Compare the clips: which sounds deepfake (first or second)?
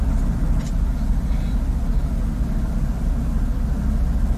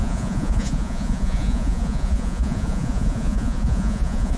second